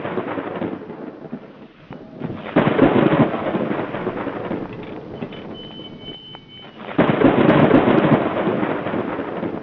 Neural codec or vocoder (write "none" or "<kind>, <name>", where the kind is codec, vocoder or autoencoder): none